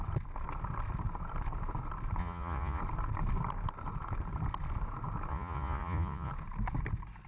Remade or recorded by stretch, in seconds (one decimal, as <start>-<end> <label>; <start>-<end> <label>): 0.0-2.2 recorded; 2.2-2.8 remade; 2.8-5.3 recorded; 5.3-6.3 remade; 6.3-7.3 recorded